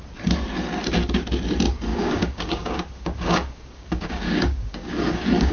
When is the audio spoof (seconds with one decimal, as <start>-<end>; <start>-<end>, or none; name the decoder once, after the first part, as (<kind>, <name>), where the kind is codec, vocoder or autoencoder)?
1.9-5.5 (codec, DAC)